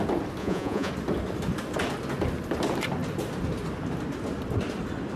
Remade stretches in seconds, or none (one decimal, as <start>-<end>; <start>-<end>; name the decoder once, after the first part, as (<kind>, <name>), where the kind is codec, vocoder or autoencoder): 0.4-0.9 (vocoder, Vocos)